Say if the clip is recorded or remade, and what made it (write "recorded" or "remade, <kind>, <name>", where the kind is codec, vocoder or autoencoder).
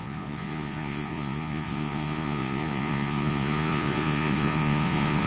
remade, vocoder, Vocos